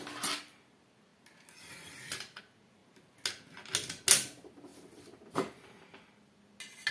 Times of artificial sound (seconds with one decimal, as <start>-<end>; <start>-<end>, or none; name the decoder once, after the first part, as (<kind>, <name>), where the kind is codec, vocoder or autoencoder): none